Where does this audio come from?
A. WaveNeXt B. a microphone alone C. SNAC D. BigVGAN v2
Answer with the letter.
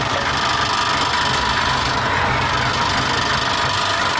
B